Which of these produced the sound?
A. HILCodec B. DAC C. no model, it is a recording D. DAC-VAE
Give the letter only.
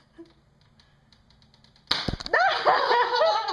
C